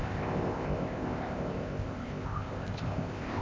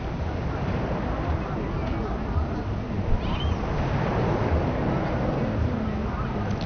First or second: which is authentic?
second